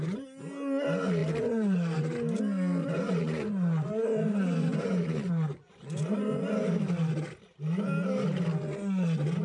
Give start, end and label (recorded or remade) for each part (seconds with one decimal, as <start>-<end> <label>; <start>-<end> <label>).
0.0-2.8 recorded; 2.8-6.8 remade; 6.8-9.4 recorded